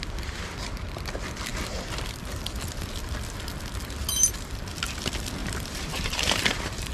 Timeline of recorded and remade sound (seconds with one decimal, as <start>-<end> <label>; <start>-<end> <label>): 0.0-5.4 recorded; 5.4-6.9 remade